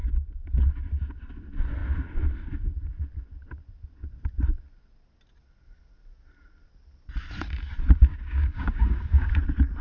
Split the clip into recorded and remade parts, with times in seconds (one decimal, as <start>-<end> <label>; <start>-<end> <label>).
0.0-8.1 recorded; 8.1-9.3 remade; 9.3-9.8 recorded